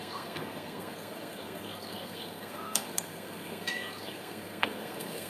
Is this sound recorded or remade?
remade